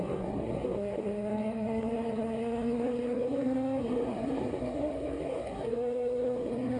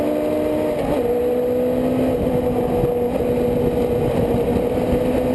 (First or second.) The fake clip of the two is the first